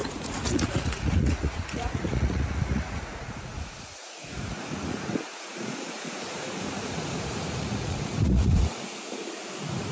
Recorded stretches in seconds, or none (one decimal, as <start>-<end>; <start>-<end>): none